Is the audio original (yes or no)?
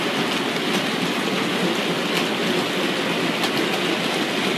yes